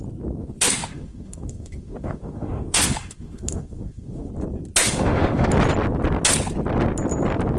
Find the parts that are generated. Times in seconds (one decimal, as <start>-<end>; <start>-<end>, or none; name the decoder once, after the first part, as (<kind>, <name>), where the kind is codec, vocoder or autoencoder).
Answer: 0.4-4.3 (autoencoder, DAC-VAE); 4.8-5.5